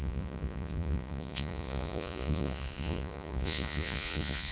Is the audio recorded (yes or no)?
no